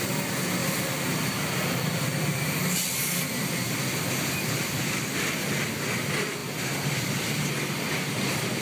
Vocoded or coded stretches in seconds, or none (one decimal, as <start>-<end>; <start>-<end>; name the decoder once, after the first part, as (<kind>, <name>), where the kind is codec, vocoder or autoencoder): 0.6-5.7 (vocoder, BigVGAN v2)